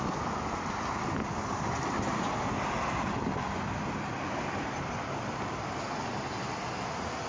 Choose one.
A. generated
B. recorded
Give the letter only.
B